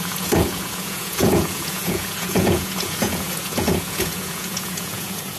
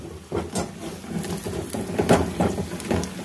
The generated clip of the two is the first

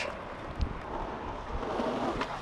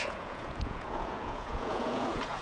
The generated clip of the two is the second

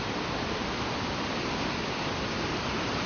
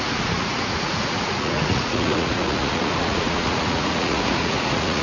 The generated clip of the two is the second